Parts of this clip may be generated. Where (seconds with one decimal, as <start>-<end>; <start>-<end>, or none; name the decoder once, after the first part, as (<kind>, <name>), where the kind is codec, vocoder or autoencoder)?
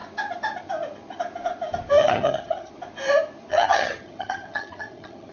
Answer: 2.0-2.7 (vocoder, HiFi-GAN); 3.5-5.3